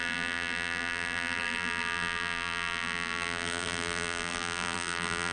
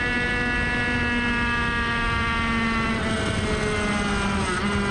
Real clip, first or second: second